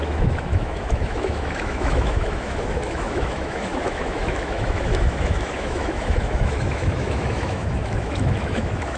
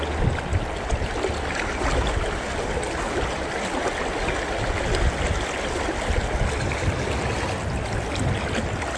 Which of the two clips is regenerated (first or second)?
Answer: first